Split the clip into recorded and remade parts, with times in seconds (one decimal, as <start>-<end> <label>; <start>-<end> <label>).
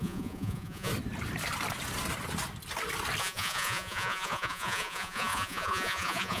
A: 0.0-0.9 remade; 0.9-3.2 recorded; 3.2-6.4 remade